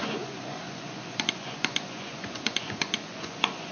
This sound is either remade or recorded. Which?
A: remade